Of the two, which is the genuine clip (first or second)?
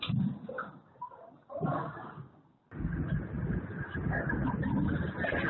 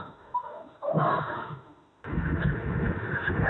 first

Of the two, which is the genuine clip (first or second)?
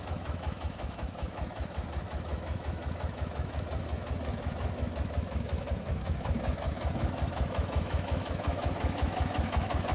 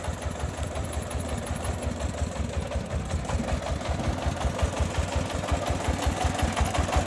second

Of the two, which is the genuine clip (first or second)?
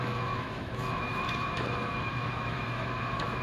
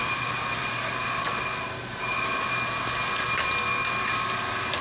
second